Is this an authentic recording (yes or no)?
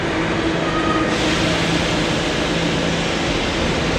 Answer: yes